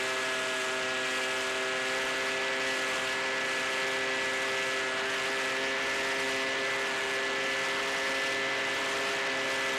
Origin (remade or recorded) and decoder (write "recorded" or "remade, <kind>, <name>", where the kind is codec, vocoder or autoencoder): recorded